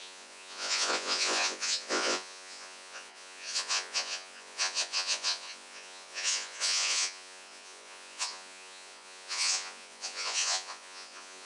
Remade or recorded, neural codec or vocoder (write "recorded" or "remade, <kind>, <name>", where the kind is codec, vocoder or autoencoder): remade, vocoder, Vocos